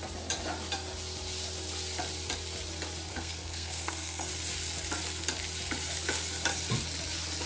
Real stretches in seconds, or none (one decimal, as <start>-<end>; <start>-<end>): 0.0-3.1; 4.3-7.5